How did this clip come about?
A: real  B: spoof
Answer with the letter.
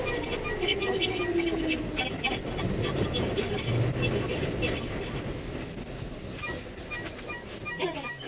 A